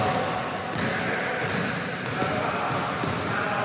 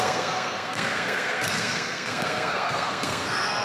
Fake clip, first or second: second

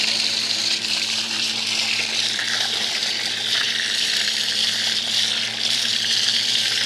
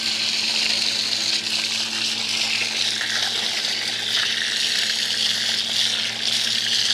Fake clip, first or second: first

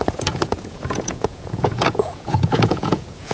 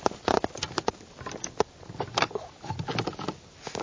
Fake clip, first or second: first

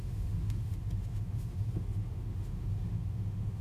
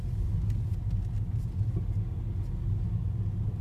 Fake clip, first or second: first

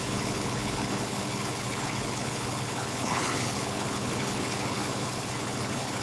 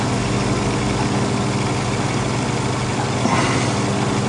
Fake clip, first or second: first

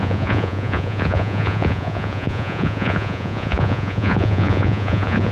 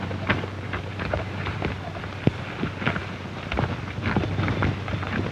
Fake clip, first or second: first